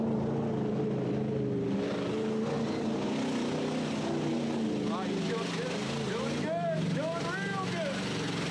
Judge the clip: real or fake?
real